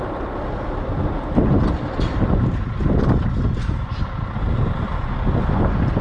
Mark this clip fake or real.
real